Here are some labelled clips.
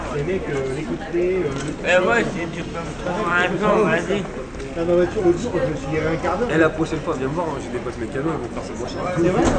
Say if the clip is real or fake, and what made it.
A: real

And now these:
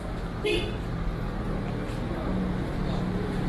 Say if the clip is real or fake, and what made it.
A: real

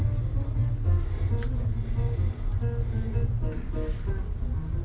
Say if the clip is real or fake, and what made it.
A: real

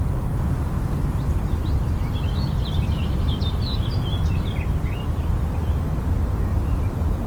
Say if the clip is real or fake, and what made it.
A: real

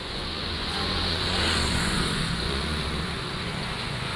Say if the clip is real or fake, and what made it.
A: fake, vocoder, Vocos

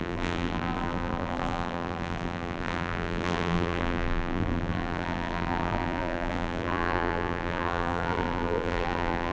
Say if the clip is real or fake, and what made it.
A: fake, vocoder, BigVGAN v2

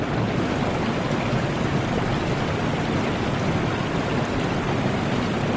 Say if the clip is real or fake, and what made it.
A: real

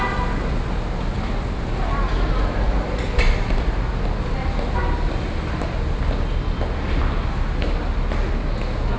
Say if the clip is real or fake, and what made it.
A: real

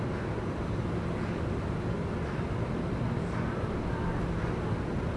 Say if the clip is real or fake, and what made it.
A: real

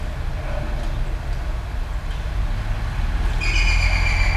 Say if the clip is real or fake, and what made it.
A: real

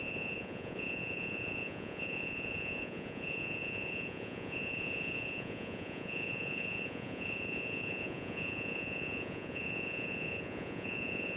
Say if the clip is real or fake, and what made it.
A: fake, vocoder, Vocos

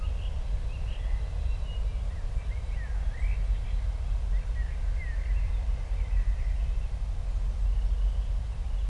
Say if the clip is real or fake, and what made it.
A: real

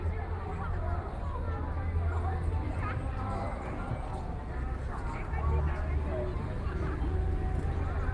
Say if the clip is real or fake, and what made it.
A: real